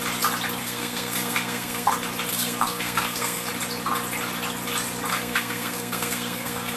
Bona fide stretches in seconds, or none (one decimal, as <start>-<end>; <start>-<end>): 0.0-0.6; 1.9-2.3; 3.5-5.1

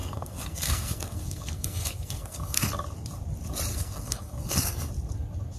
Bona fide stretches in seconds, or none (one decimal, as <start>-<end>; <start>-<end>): 2.7-3.7; 4.9-5.6

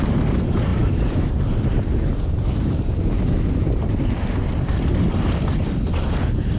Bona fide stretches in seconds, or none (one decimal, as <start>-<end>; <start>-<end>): 0.0-6.6

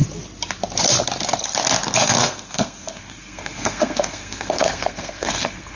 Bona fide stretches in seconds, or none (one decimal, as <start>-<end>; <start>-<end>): 0.0-2.0

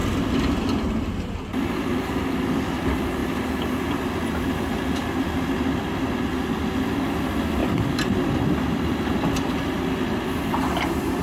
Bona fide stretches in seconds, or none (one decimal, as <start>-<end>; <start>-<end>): 1.0-7.6; 8.3-11.2

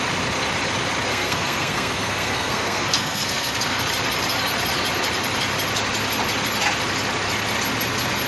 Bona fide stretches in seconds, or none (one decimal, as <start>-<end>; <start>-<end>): 0.0-1.1; 3.8-8.3

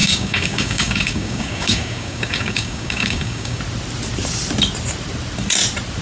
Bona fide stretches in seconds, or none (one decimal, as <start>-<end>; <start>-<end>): 3.6-6.0

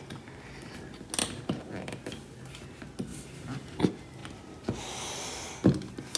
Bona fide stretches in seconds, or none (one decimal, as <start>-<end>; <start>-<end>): 0.0-1.2; 2.5-3.1; 3.8-6.2